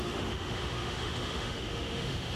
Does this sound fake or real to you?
fake